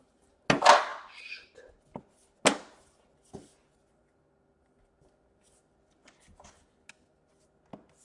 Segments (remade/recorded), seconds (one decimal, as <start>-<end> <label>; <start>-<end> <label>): 0.0-8.0 recorded